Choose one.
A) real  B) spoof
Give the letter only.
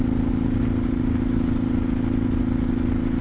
A